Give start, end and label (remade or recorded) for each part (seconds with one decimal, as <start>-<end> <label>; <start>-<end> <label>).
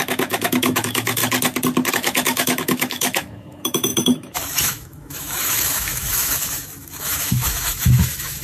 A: 0.0-1.2 remade; 1.2-1.9 recorded; 1.9-8.4 remade